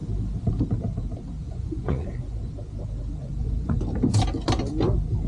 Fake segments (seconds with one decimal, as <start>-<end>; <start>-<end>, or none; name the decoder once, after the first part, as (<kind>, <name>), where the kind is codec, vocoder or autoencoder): 1.4-2.5 (vocoder, Vocos); 3.2-3.8